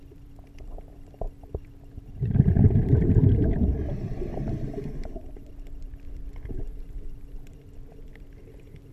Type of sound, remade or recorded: remade